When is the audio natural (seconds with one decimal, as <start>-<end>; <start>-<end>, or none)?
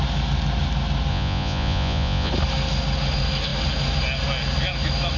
0.0-1.1; 2.3-5.2